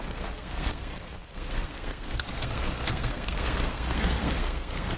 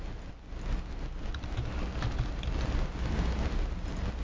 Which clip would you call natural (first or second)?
second